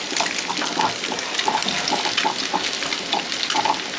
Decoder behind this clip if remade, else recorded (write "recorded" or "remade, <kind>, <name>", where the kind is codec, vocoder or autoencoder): recorded